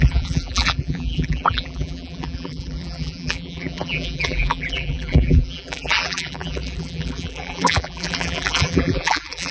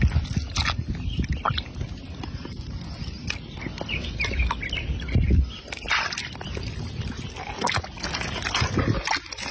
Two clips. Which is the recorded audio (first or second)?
second